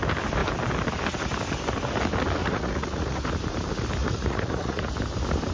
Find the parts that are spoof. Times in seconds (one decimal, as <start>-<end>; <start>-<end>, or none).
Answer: 2.4-3.2; 4.0-4.9